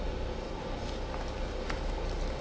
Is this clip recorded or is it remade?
recorded